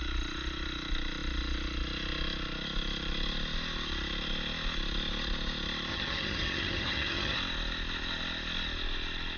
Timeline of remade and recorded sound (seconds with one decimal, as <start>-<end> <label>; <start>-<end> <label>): 0.0-5.9 recorded; 5.9-7.4 remade; 7.4-9.4 recorded